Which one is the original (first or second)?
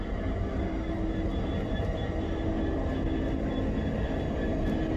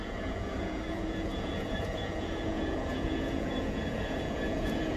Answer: first